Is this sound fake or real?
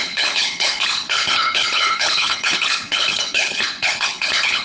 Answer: fake